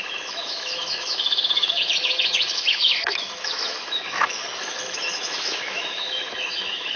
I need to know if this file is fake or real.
fake